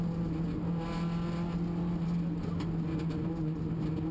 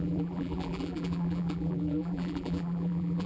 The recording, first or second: first